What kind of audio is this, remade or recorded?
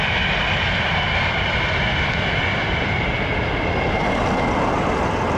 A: recorded